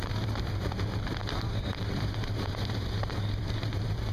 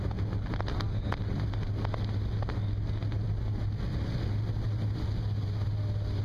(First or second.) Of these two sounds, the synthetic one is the first